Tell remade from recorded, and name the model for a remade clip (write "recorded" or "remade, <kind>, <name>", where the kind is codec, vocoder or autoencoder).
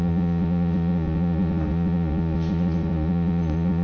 remade, vocoder, Vocos